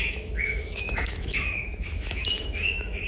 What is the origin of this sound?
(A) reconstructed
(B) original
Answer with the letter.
A